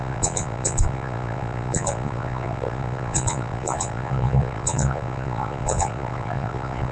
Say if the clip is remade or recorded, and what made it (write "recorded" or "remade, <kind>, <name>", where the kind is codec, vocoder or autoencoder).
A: remade, vocoder, Vocos